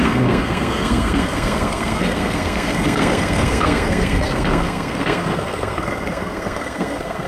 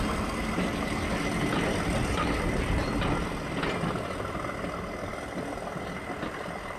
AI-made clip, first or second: first